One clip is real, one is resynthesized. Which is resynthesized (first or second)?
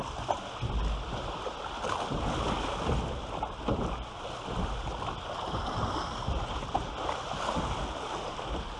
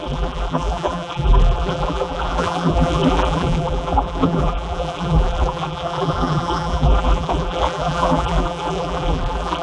second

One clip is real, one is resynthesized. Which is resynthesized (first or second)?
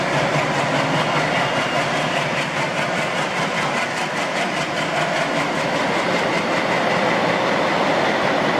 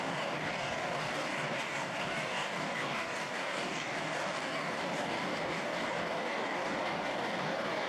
second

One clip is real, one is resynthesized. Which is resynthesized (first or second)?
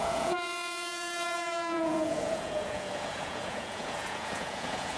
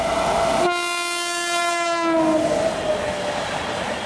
first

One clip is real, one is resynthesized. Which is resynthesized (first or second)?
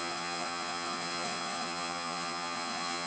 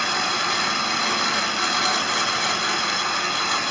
first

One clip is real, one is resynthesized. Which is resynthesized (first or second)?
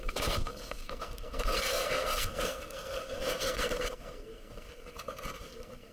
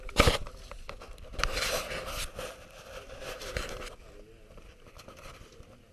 first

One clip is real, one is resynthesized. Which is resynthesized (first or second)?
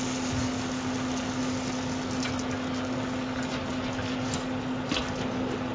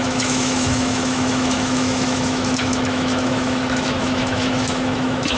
second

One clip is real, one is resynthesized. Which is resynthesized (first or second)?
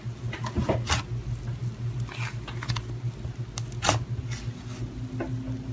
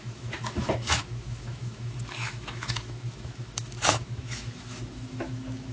second